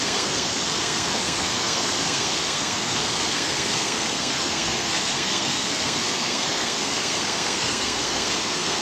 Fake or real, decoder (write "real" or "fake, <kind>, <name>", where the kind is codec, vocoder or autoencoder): fake, codec, SNAC